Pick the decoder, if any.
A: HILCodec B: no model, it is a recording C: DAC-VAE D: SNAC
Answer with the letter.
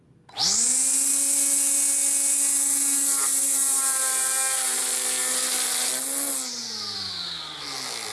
B